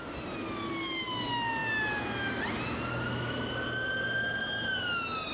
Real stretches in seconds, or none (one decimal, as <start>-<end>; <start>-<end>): 0.0-5.3

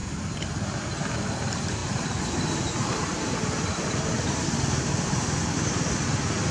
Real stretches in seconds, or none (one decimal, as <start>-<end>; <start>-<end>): 0.0-1.3; 1.8-4.8

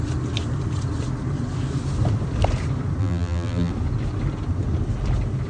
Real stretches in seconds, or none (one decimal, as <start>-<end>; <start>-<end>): 0.0-3.0; 3.7-5.5

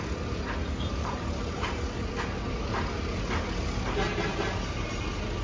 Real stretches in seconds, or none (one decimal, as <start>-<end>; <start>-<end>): 0.0-0.9; 1.7-4.3; 5.0-5.4

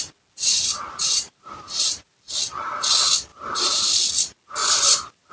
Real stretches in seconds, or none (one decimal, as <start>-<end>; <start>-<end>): 0.0-1.0; 2.3-3.3; 4.1-4.6

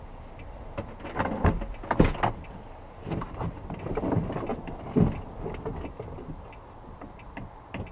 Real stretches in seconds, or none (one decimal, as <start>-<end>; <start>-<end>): 0.0-7.9

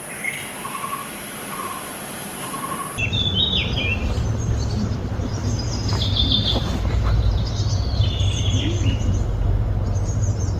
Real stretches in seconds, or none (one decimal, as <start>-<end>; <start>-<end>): 0.0-1.0; 2.7-5.3; 8.9-10.6

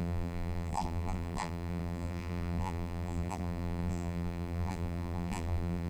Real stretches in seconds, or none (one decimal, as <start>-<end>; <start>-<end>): none